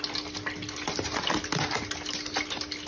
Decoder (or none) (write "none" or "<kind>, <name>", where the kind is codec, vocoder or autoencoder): none